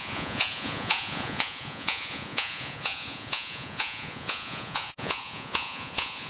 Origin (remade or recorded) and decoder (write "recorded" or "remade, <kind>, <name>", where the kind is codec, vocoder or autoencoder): remade, vocoder, Vocos